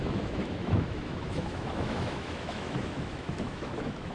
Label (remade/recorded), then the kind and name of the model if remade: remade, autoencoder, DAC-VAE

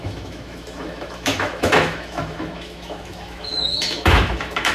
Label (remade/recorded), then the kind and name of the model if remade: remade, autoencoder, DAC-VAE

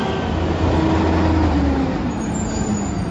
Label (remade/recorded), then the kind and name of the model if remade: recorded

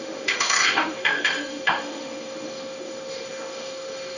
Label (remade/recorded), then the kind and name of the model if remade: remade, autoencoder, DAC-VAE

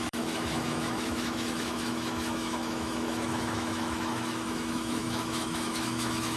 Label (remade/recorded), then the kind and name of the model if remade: remade, autoencoder, DAC-VAE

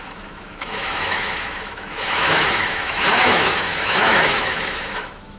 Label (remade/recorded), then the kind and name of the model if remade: remade, autoencoder, DAC-VAE